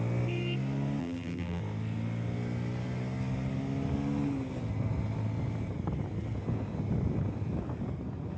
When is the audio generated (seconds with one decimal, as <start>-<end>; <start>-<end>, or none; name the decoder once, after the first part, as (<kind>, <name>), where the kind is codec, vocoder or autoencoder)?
1.0-1.6 (vocoder, BigVGAN v2)